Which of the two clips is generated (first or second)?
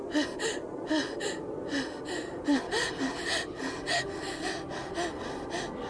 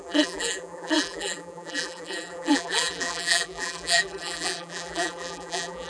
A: second